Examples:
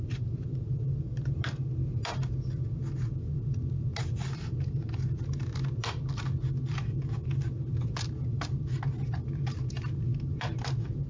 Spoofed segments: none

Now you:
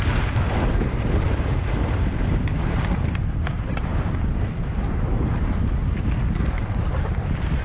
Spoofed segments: 0.0-2.5 (vocoder, BigVGAN v2); 3.1-3.9; 6.7-7.6

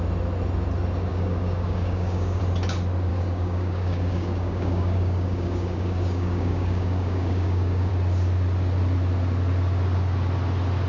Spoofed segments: 1.1-2.4 (codec, DAC); 3.1-7.9

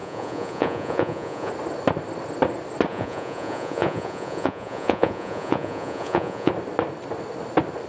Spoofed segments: 0.0-1.5 (vocoder, Vocos); 2.9-6.5

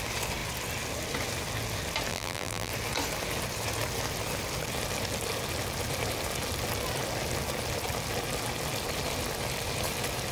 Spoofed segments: 2.1-2.7 (vocoder, BigVGAN v2)